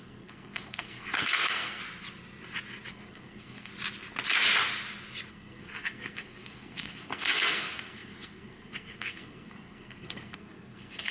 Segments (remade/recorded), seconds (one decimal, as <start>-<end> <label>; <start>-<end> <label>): 0.0-1.8 remade; 1.8-2.9 recorded; 2.9-3.7 remade; 3.7-5.3 recorded; 5.3-11.1 remade